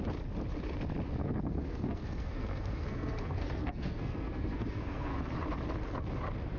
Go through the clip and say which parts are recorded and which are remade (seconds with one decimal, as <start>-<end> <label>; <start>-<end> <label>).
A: 0.0-1.2 recorded; 1.2-5.2 remade; 5.2-6.6 recorded